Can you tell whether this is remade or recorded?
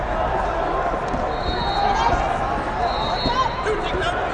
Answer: recorded